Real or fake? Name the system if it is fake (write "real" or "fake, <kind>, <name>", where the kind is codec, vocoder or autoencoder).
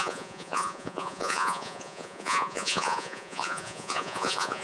fake, vocoder, Vocos